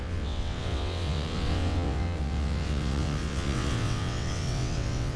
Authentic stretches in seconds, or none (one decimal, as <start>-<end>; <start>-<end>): none